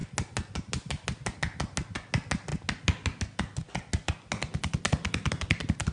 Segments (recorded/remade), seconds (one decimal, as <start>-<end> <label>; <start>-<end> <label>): 0.0-5.9 recorded